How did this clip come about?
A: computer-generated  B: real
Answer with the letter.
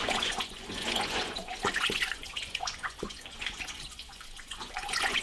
A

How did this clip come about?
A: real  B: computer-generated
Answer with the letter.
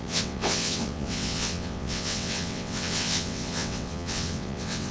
B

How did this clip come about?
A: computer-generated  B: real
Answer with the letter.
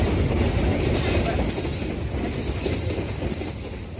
B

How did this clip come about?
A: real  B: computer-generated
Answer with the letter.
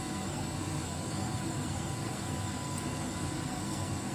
B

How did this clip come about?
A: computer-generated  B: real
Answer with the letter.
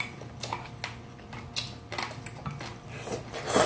B